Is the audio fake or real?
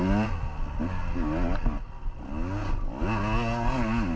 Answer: real